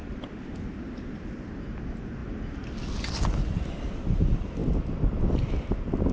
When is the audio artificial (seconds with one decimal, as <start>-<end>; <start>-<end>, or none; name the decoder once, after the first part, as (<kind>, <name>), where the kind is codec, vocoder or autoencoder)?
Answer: none